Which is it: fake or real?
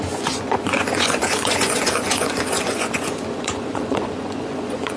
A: fake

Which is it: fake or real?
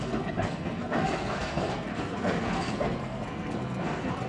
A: fake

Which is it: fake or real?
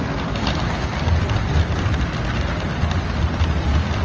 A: real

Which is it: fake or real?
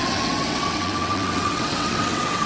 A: fake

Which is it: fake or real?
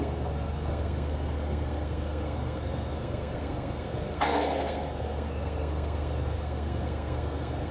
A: fake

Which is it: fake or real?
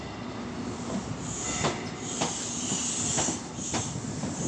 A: real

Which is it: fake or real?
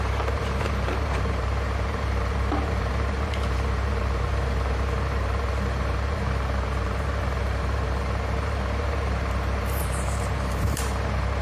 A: fake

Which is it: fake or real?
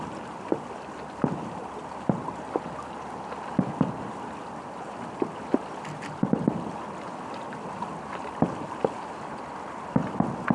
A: real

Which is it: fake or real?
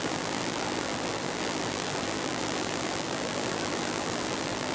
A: fake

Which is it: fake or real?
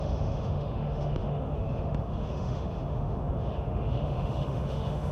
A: fake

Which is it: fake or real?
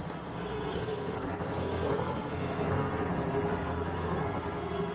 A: fake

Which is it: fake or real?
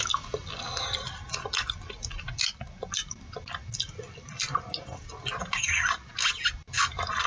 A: real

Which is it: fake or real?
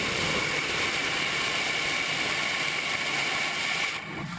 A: real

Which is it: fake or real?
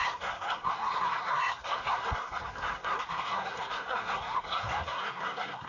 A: fake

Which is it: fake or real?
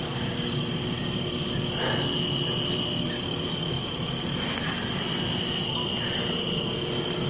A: real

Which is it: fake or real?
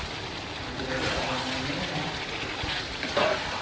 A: real